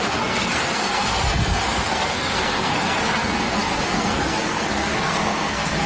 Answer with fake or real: fake